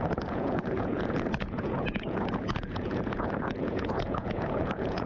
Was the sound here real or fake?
fake